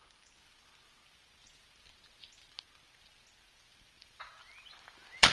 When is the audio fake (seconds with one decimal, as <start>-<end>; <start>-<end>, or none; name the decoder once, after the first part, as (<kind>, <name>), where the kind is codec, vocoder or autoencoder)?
4.0-5.3 (vocoder, BigVGAN v2)